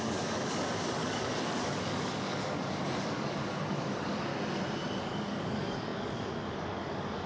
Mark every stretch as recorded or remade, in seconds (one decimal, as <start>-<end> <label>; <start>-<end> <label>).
0.0-4.3 remade; 4.3-5.0 recorded; 5.0-7.3 remade

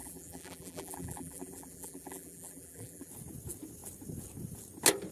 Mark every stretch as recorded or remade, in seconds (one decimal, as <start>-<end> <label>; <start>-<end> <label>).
0.0-3.1 remade; 3.1-5.1 recorded

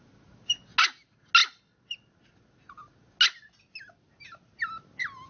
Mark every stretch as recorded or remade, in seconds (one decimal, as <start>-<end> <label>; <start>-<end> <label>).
0.0-5.3 recorded

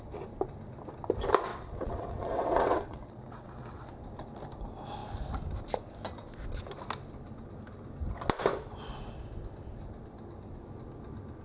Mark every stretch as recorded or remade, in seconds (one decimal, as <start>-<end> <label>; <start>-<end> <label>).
0.0-1.5 recorded; 1.5-3.9 remade; 3.9-11.4 recorded

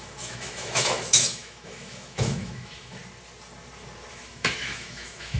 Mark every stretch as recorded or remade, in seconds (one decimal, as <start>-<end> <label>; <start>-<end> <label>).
0.0-3.0 remade; 3.0-4.1 recorded; 4.1-5.4 remade